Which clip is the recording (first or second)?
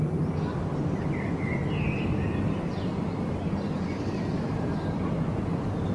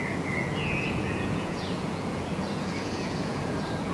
first